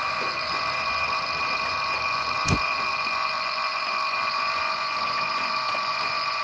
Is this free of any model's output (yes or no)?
no